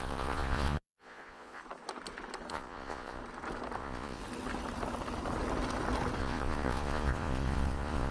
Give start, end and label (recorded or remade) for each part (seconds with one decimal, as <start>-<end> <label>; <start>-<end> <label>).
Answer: 0.0-1.6 remade; 1.6-2.5 recorded; 2.5-3.2 remade; 3.2-3.8 recorded; 3.8-4.2 remade; 4.2-6.2 recorded; 6.2-8.1 remade